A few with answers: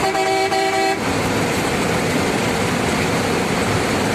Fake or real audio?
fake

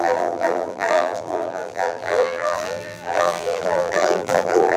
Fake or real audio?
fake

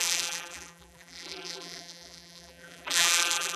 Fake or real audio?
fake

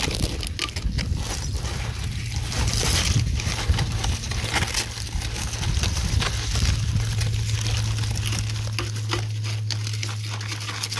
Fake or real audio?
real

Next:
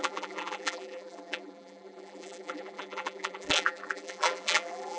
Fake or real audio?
fake